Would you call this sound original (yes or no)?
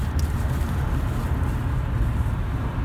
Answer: yes